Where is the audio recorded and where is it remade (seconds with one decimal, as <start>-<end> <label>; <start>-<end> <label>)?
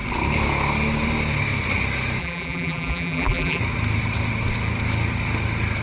0.0-2.2 recorded; 2.2-3.6 remade; 3.6-5.8 recorded